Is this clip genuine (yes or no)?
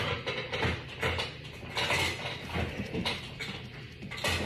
yes